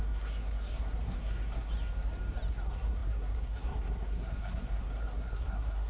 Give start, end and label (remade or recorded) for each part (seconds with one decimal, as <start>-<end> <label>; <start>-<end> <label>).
0.0-1.7 remade; 1.7-2.5 recorded; 2.5-5.9 remade